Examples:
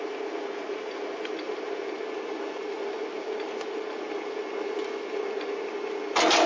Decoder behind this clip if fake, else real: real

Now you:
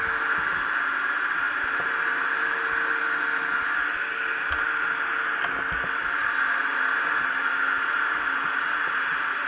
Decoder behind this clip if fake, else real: real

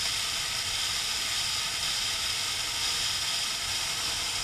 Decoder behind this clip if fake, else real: real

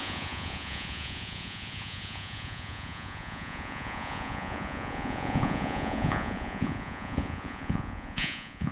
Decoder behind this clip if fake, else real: fake, vocoder, Vocos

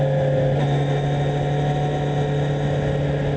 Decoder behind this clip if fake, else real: real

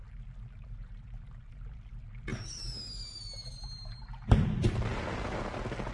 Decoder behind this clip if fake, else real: real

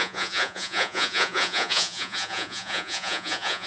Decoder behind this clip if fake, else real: fake, vocoder, Vocos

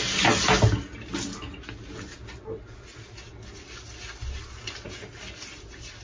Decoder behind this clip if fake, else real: real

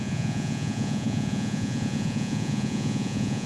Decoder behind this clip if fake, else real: fake, vocoder, Vocos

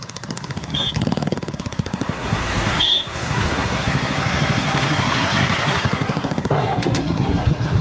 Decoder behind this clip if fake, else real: fake, codec, SNAC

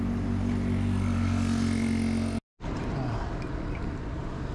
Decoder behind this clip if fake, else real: real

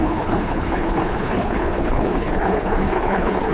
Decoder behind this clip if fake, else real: fake, codec, HILCodec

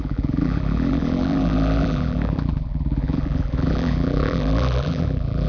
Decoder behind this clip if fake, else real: fake, vocoder, BigVGAN v2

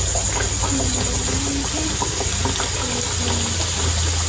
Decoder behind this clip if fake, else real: real